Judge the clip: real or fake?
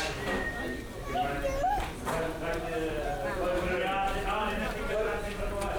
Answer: real